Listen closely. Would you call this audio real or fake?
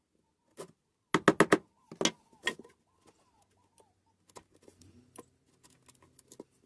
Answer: real